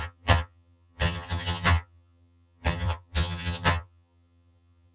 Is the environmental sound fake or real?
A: fake